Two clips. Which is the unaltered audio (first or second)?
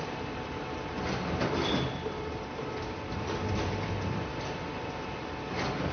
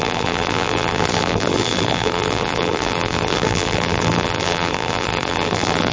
first